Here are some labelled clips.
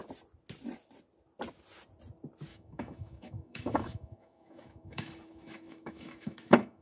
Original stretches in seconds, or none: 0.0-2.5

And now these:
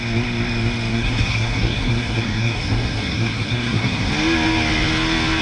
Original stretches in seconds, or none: 0.0-0.9; 4.1-5.4

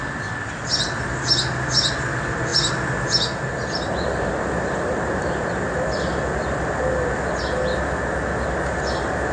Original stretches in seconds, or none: 0.0-9.3

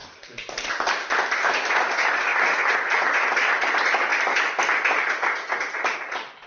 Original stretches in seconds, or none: 0.0-6.5

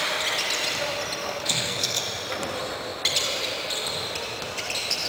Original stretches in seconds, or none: 0.0-1.2; 2.0-5.1